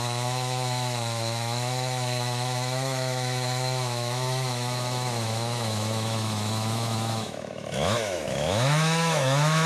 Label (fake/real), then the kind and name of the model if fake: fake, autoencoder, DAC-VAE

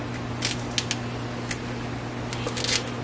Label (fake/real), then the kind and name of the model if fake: real